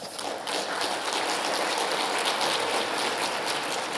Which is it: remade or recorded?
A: recorded